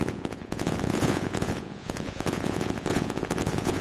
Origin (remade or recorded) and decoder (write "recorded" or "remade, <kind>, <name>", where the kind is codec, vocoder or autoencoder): remade, vocoder, Vocos